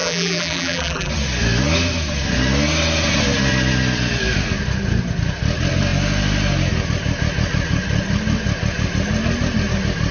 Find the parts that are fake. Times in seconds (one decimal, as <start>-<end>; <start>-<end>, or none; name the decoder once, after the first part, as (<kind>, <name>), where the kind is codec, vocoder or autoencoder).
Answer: 0.0-1.1 (vocoder, BigVGAN v2)

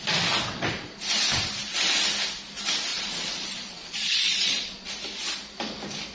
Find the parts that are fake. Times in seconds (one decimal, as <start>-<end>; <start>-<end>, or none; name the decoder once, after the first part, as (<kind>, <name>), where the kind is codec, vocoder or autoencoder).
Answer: 2.9-4.9 (vocoder, Vocos)

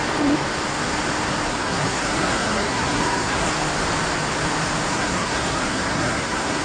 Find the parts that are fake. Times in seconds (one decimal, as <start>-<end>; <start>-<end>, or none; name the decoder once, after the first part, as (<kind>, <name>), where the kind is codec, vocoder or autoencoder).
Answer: 1.5-3.5 (codec, SNAC); 4.9-6.6

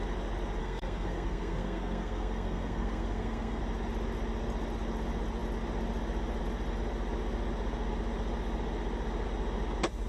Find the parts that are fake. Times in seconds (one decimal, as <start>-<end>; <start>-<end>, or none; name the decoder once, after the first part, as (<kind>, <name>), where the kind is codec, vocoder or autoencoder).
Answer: 0.6-3.6 (codec, SNAC)

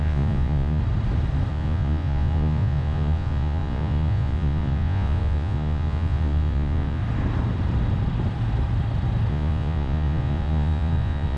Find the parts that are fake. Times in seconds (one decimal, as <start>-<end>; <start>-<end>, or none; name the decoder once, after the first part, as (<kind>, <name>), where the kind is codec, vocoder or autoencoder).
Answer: 0.0-0.8 (vocoder, Vocos); 1.5-7.0; 9.3-11.4

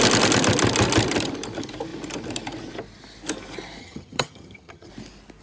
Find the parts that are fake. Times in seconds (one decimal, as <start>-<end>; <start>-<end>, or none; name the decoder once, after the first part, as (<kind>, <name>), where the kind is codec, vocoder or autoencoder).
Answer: 3.8-4.9 (vocoder, HiFi-GAN)

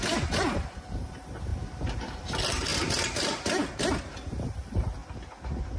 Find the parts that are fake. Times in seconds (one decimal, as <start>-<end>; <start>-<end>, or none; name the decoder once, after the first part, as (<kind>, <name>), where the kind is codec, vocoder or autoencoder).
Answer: 0.0-5.0 (vocoder, BigVGAN v2)